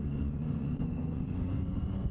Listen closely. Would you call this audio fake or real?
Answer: fake